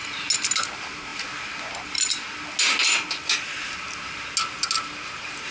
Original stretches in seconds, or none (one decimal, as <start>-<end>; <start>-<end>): 0.0-5.5